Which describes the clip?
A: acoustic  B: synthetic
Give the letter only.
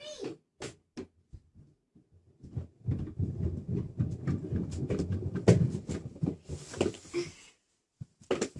A